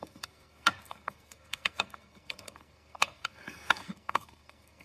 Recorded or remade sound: remade